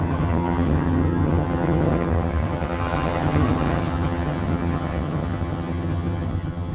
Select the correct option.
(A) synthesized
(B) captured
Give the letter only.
A